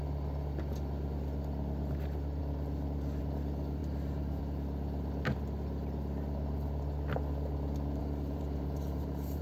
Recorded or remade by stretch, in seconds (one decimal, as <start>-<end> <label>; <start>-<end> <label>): 0.0-3.8 recorded; 3.8-4.4 remade; 4.4-8.0 recorded; 8.0-9.4 remade